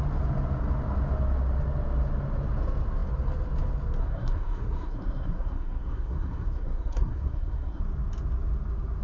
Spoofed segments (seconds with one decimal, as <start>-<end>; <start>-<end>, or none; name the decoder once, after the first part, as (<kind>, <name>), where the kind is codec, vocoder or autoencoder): 4.0-7.8 (codec, SNAC)